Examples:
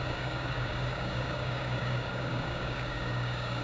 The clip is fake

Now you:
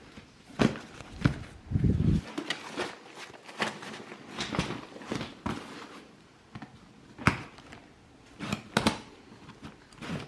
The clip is real